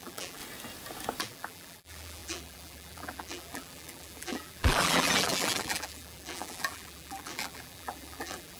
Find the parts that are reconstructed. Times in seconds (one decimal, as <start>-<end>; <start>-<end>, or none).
0.0-0.4; 1.2-8.6